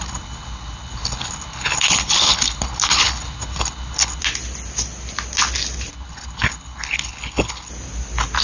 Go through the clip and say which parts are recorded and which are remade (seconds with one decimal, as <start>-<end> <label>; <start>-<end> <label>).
0.0-4.2 remade; 4.2-5.9 recorded; 5.9-7.7 remade; 7.7-8.4 recorded